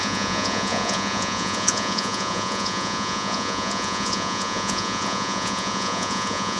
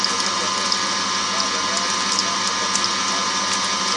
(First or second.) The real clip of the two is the second